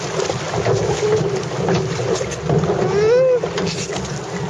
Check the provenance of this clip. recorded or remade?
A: recorded